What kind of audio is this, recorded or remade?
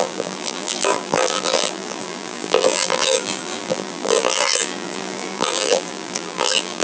remade